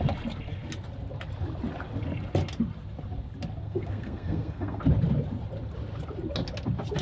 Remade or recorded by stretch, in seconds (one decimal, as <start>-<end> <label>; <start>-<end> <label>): 0.0-3.6 recorded; 3.6-4.8 remade; 4.8-7.0 recorded